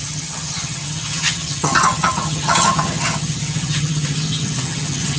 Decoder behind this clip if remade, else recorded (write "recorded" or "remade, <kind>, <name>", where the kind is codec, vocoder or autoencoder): remade, vocoder, HiFi-GAN